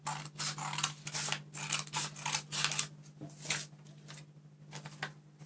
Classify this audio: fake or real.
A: real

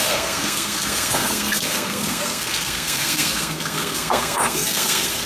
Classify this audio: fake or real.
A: fake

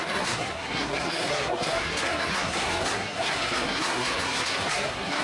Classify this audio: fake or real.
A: fake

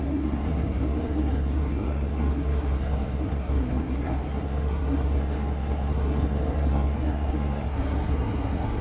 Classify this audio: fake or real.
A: fake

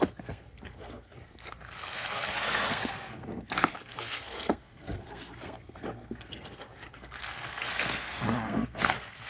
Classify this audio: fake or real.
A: fake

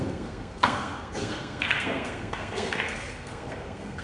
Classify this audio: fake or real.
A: fake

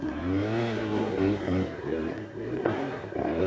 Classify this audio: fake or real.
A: fake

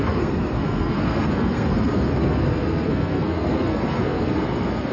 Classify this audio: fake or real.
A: fake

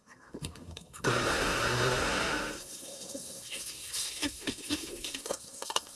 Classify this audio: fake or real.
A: fake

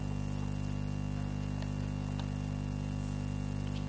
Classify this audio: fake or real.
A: real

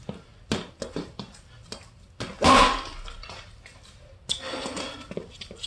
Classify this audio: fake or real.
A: real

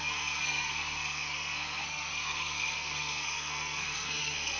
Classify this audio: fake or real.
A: fake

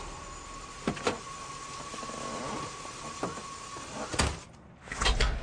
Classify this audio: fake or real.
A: real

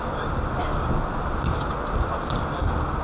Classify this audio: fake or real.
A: real